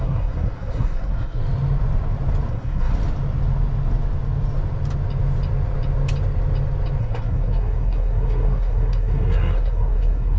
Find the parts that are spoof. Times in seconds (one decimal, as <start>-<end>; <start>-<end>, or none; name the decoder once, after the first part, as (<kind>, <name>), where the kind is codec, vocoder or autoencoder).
0.0-1.4 (codec, SNAC); 2.5-2.9; 7.0-10.4